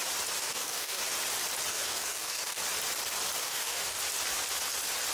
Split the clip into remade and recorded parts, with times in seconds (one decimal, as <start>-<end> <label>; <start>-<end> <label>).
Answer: 0.0-0.4 recorded; 0.4-1.0 remade; 1.0-1.7 recorded; 1.7-2.6 remade; 2.6-3.4 recorded; 3.4-4.0 remade; 4.0-5.1 recorded

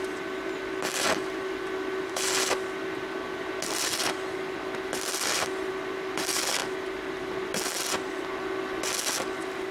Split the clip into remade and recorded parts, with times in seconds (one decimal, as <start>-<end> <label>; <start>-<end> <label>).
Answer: 0.0-9.7 recorded

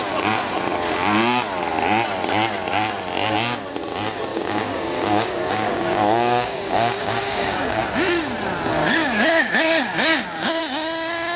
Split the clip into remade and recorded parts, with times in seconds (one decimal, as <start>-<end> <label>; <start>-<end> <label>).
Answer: 0.0-4.3 recorded; 4.3-7.8 remade; 7.8-8.8 recorded; 8.8-10.6 remade; 10.6-11.4 recorded

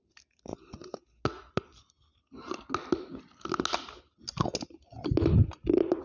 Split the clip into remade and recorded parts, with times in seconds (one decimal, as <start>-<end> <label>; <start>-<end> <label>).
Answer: 0.0-6.0 recorded

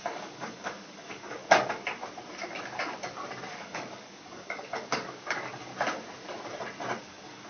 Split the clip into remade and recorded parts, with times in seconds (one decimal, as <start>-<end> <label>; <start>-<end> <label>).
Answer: 0.0-1.4 remade; 1.4-3.5 recorded; 3.5-5.7 remade; 5.7-7.0 recorded; 7.0-7.5 remade

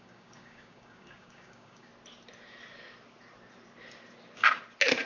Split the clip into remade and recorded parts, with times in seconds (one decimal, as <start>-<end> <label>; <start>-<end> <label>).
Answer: 0.0-1.9 remade; 1.9-5.1 recorded

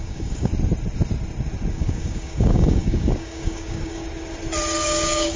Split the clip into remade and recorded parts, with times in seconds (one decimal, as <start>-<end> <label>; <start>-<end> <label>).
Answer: 0.0-0.5 remade; 0.5-1.7 recorded; 1.7-4.0 remade; 4.0-4.8 recorded; 4.8-5.4 remade